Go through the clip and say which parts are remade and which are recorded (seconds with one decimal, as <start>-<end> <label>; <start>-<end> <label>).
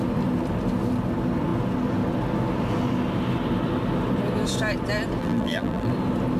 0.0-5.2 recorded; 5.2-5.9 remade; 5.9-6.4 recorded